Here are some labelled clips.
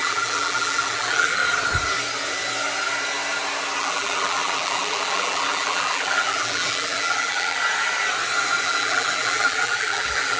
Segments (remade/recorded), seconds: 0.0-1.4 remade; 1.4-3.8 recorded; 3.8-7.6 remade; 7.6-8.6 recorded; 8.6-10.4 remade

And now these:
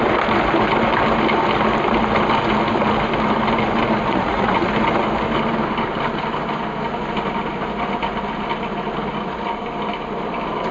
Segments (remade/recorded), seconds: 0.0-4.1 recorded; 4.1-4.7 remade; 4.7-10.7 recorded

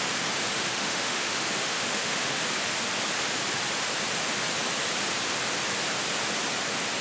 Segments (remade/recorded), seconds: 0.0-0.5 recorded; 0.5-2.4 remade; 2.4-7.0 recorded

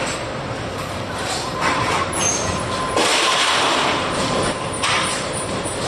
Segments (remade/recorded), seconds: 0.0-1.1 remade; 1.1-3.1 recorded; 3.1-5.9 remade